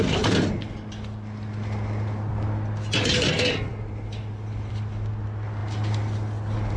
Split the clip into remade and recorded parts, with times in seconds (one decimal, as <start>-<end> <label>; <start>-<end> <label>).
0.0-6.8 recorded